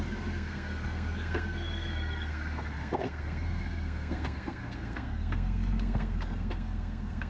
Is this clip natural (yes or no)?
no